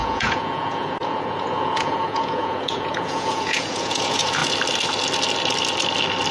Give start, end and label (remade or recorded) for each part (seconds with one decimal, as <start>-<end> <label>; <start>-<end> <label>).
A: 0.0-4.4 remade; 4.4-6.3 recorded